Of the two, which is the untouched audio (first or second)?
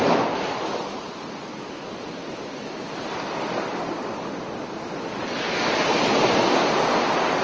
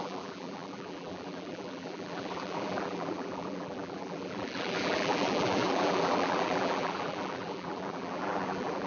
first